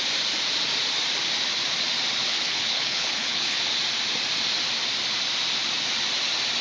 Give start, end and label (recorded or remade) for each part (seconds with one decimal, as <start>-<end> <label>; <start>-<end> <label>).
0.0-2.3 recorded; 2.3-3.6 remade; 3.6-6.6 recorded